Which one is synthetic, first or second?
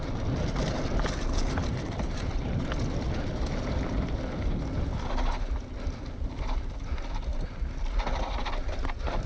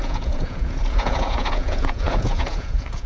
second